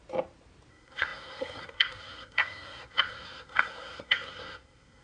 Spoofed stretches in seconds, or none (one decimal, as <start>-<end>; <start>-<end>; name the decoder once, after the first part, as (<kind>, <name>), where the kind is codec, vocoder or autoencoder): 0.7-5.0 (codec, SNAC)